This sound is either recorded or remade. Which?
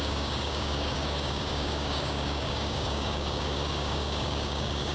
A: remade